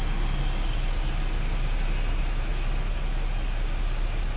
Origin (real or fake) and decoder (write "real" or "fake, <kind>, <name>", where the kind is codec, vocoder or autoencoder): real